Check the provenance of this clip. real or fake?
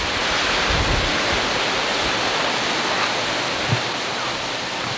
real